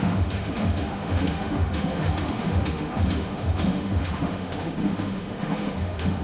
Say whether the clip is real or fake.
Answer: fake